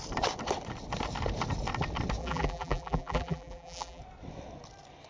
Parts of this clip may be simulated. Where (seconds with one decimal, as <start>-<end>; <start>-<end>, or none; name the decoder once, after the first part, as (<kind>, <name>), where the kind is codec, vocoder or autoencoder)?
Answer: 2.2-4.0 (vocoder, BigVGAN v2)